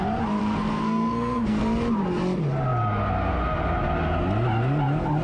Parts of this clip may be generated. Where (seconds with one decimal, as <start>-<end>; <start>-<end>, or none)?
0.4-1.6